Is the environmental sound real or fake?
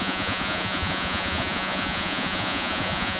fake